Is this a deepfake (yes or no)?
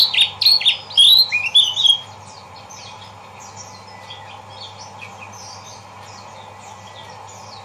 no